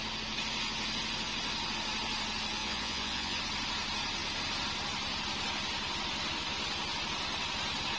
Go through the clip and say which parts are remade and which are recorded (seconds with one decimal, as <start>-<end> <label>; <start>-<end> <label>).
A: 0.0-2.6 recorded; 2.6-3.4 remade; 3.4-8.0 recorded